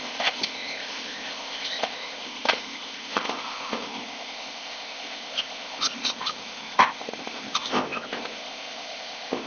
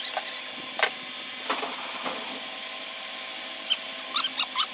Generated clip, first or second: first